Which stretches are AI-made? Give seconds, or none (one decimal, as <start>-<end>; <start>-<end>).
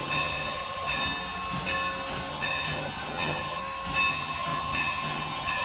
0.0-1.0; 2.3-3.6; 4.1-5.6